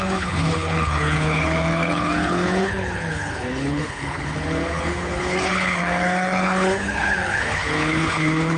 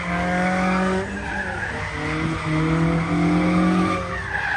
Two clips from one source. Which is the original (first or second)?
second